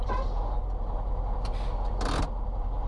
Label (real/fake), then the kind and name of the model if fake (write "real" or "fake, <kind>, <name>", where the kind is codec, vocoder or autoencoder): real